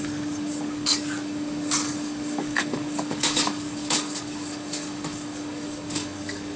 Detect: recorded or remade remade